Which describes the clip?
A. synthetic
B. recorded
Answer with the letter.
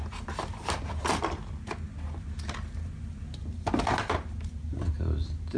B